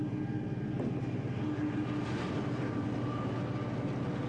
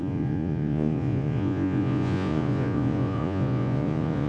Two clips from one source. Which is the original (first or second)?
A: first